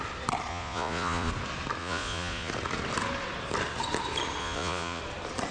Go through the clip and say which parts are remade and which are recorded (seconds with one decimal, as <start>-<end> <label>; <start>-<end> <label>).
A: 0.0-0.5 recorded; 0.5-1.3 remade; 1.3-1.8 recorded; 1.8-2.5 remade; 2.5-4.4 recorded; 4.4-5.0 remade; 5.0-5.5 recorded